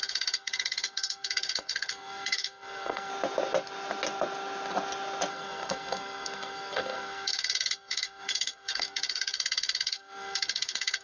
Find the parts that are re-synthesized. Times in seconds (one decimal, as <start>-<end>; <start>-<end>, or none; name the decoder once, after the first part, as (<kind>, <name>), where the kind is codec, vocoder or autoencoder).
0.0-3.1 (codec, SNAC); 5.3-11.0